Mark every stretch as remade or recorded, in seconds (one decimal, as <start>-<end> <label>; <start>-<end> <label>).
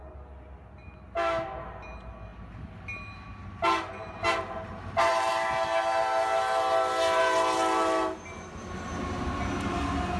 0.0-10.2 recorded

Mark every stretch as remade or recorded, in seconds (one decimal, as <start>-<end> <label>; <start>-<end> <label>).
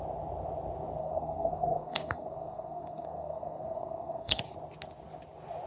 0.0-1.0 recorded; 1.0-4.4 remade; 4.4-5.7 recorded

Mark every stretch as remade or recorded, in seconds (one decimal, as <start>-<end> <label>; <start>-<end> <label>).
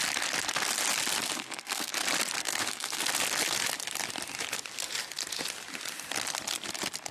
0.0-1.2 recorded; 1.2-1.9 remade; 1.9-2.4 recorded; 2.4-3.0 remade; 3.0-7.1 recorded